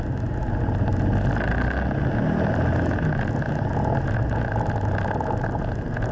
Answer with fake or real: real